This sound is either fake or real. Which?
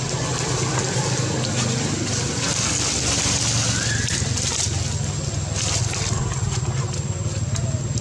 real